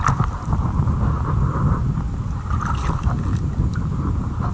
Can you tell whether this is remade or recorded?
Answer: recorded